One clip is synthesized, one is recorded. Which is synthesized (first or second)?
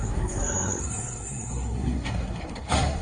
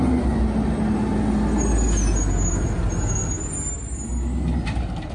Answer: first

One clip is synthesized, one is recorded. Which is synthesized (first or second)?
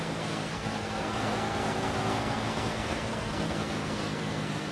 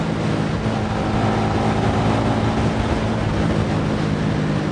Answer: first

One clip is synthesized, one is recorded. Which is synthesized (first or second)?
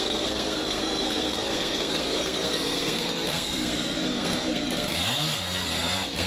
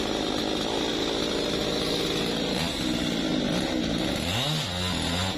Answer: first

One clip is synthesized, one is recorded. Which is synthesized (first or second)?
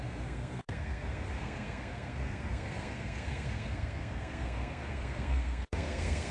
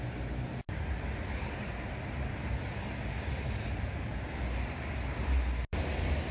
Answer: first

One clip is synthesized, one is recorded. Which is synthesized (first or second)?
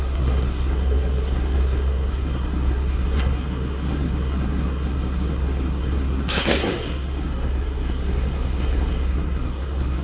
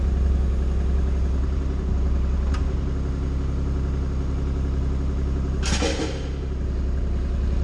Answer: first